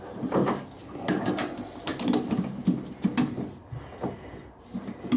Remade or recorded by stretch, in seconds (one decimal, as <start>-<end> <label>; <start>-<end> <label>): 0.0-5.2 recorded